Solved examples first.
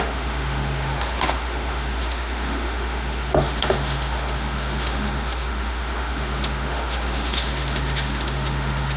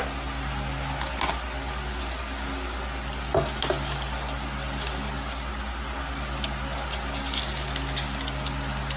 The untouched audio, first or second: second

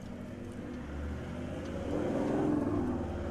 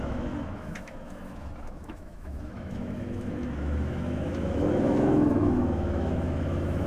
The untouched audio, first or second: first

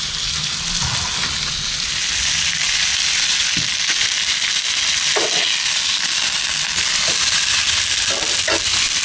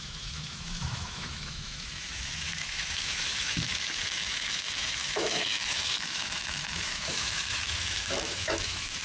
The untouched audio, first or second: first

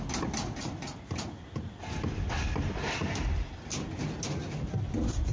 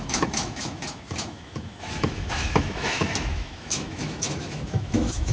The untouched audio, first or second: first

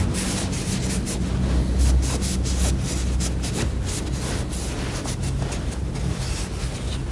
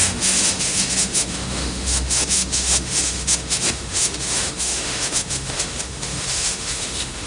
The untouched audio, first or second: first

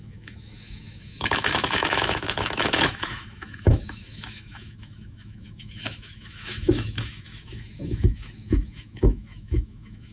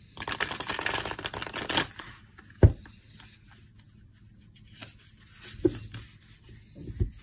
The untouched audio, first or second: second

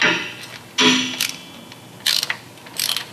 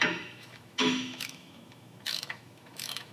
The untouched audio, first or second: first